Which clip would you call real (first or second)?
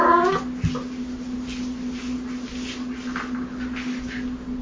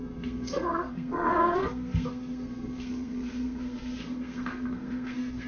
first